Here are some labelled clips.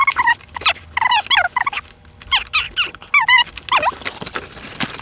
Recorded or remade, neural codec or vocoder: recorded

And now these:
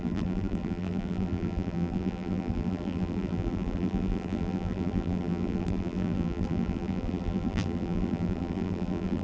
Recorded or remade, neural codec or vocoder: remade, vocoder, BigVGAN v2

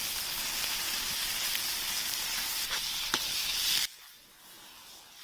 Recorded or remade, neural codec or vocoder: remade, vocoder, BigVGAN v2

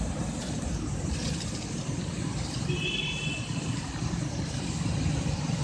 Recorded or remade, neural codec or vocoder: recorded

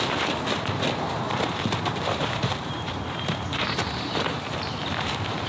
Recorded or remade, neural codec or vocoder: remade, vocoder, BigVGAN v2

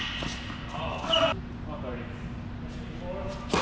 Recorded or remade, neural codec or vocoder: recorded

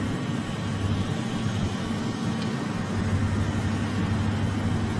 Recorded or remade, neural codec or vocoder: recorded